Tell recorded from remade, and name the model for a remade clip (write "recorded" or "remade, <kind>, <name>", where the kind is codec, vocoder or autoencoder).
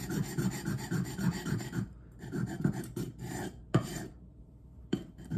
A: remade, vocoder, BigVGAN v2